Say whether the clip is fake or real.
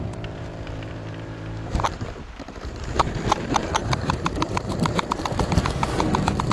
fake